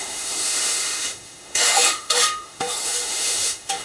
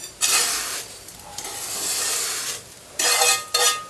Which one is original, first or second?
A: second